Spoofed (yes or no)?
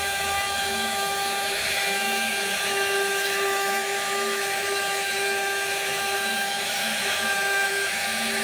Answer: yes